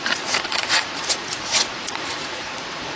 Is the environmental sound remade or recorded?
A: remade